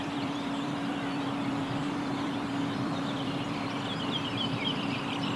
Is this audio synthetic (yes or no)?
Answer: yes